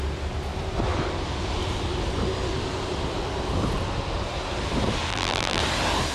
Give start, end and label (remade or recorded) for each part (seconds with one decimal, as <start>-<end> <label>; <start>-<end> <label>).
0.0-5.1 recorded; 5.1-5.6 remade; 5.6-6.1 recorded